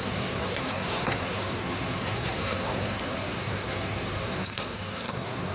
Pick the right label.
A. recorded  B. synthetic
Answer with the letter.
B